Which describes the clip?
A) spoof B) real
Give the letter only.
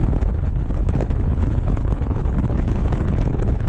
A